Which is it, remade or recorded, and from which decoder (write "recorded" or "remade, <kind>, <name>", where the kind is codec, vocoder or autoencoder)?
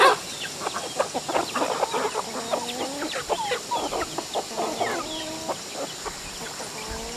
recorded